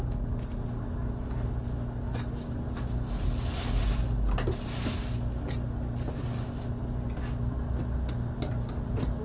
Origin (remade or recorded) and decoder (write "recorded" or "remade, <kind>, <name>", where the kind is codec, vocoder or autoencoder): recorded